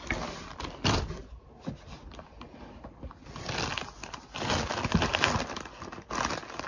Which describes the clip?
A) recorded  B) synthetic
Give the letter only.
A